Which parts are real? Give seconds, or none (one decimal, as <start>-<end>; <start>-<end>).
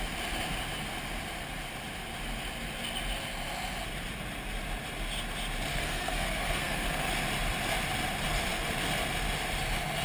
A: 0.0-5.7; 7.1-10.0